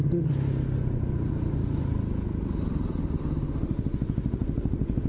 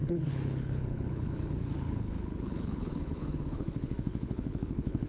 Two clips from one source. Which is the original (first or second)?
first